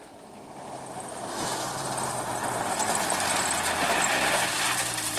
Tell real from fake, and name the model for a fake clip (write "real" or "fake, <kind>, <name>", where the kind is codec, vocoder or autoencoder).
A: real